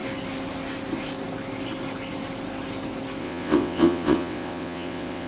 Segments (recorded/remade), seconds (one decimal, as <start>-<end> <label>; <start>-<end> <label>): 0.0-3.2 recorded; 3.2-5.3 remade